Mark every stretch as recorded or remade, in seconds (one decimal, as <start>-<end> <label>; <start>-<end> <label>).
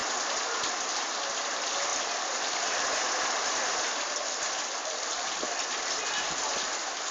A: 0.0-7.1 recorded